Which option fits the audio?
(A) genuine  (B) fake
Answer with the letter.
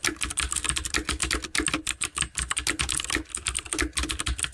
A